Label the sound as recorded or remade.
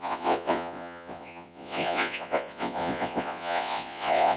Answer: remade